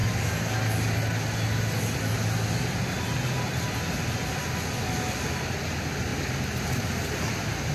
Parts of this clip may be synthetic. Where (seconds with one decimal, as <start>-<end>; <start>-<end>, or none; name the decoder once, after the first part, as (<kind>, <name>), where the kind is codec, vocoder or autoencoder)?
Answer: none